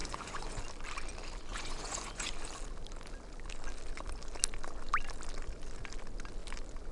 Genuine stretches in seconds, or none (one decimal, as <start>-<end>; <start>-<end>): 0.6-1.5; 2.3-6.9